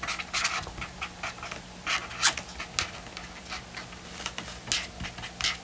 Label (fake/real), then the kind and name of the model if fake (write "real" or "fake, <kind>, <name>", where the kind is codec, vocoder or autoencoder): real